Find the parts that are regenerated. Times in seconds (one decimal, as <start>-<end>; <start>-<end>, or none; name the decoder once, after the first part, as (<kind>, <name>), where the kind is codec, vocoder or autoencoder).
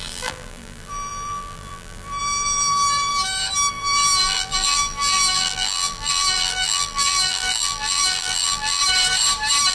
0.0-3.1 (vocoder, BigVGAN v2); 3.7-8.8